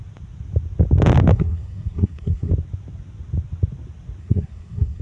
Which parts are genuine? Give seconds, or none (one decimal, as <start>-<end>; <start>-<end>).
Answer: 0.0-1.3; 2.5-4.2